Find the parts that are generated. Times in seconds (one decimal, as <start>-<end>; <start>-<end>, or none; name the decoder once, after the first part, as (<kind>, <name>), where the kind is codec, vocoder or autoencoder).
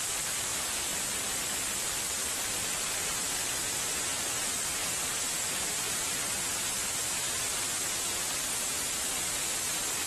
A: 4.8-6.1 (vocoder, BigVGAN v2)